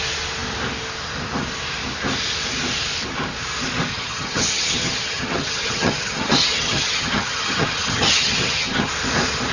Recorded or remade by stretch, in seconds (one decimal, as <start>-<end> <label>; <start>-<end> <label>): 0.0-3.9 recorded; 3.9-8.9 remade; 8.9-9.5 recorded